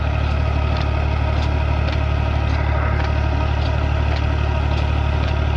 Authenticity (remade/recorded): recorded